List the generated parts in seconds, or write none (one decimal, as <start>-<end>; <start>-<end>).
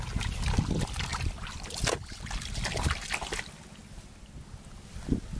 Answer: none